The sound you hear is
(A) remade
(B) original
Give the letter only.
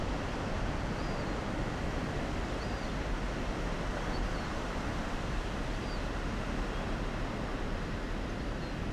B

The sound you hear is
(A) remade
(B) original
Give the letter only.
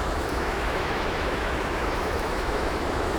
A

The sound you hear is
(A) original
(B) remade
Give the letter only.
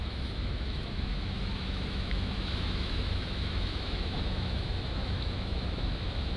B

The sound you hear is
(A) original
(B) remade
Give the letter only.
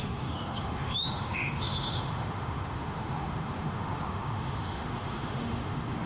B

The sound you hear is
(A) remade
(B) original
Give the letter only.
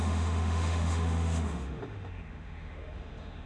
A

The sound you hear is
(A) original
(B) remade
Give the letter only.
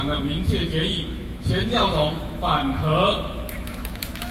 B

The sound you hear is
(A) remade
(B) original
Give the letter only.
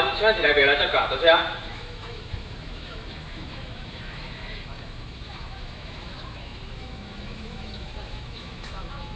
A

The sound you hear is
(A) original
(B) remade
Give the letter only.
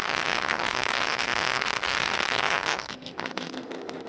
B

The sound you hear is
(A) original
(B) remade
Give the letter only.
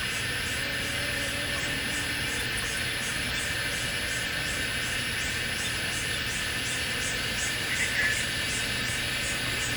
A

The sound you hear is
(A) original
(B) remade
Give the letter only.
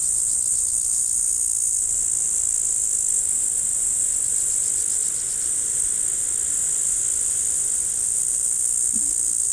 A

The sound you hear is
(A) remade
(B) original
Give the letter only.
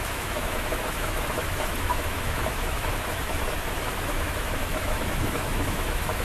A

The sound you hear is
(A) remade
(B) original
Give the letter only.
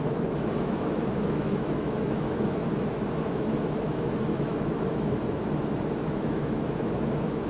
A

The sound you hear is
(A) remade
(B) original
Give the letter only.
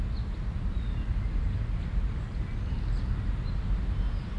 B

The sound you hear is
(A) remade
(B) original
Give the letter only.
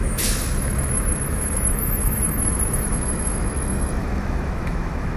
A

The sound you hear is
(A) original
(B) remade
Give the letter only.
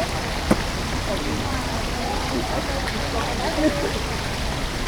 A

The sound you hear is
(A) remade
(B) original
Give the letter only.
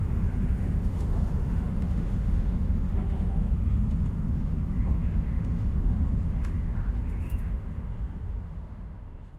A